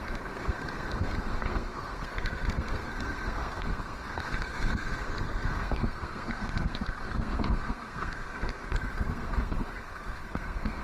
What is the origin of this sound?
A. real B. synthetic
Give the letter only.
B